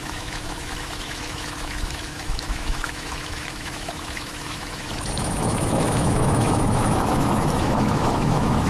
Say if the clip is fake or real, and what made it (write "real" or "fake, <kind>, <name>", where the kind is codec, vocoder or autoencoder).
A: fake, autoencoder, DAC-VAE